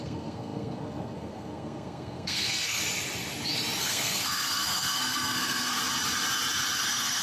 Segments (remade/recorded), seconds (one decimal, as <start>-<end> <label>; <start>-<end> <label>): 0.0-2.8 remade; 2.8-3.8 recorded; 3.8-5.8 remade; 5.8-6.8 recorded; 6.8-7.2 remade